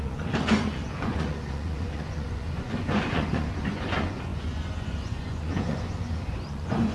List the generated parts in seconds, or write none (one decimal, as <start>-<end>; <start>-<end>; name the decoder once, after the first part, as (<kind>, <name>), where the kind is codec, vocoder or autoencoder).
0.0-6.9 (vocoder, Vocos)